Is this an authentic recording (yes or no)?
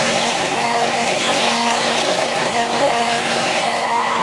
no